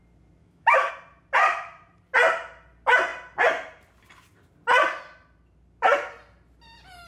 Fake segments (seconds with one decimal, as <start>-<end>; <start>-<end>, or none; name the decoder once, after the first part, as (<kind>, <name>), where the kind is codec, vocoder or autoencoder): 0.4-0.9 (autoencoder, DAC-VAE)